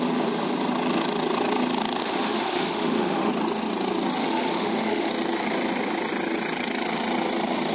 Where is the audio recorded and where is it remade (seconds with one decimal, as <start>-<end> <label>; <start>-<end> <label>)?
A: 0.0-2.0 recorded; 2.0-3.3 remade; 3.3-4.2 recorded; 4.2-5.1 remade; 5.1-7.7 recorded